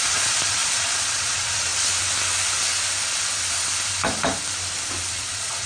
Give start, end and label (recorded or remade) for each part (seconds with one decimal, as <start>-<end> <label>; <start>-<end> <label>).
0.0-1.7 remade; 1.7-5.1 recorded; 5.1-5.7 remade